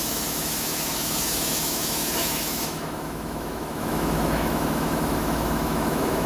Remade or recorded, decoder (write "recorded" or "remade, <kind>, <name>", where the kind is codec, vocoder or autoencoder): remade, autoencoder, DAC-VAE